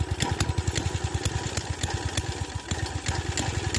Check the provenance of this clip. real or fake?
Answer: real